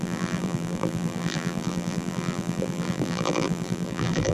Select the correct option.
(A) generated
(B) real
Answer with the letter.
A